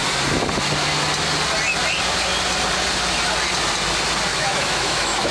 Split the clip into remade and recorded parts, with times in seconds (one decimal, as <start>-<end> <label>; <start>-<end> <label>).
0.0-4.3 recorded; 4.3-5.3 remade